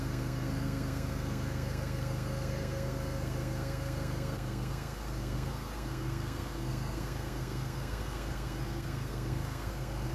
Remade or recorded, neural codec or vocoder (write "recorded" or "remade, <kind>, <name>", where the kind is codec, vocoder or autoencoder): remade, codec, SNAC